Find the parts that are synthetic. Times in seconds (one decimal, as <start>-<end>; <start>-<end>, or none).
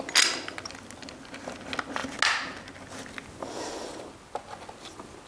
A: none